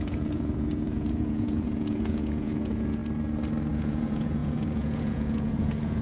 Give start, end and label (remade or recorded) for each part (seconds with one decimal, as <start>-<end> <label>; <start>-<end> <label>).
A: 0.0-3.0 remade; 3.0-3.7 recorded; 3.7-6.0 remade